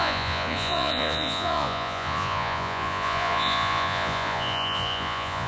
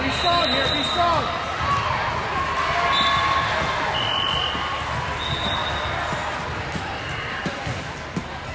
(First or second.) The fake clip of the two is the first